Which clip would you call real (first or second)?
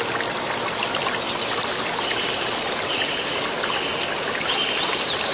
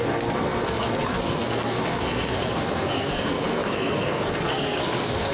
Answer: first